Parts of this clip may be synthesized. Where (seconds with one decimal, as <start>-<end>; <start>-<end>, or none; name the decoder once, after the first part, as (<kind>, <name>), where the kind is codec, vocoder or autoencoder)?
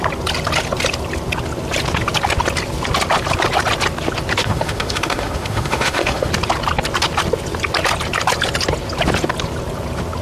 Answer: 4.4-6.3 (autoencoder, DAC-VAE)